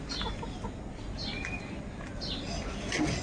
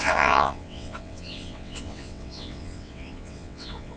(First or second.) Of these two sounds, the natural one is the first